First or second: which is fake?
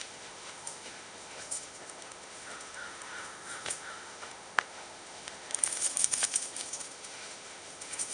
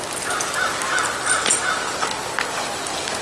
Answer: first